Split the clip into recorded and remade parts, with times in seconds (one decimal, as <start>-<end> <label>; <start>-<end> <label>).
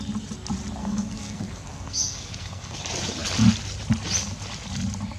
0.0-0.8 recorded; 0.8-2.8 remade; 2.8-5.2 recorded